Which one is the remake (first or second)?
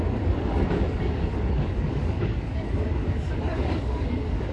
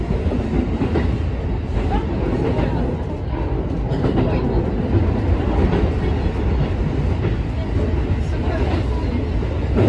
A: first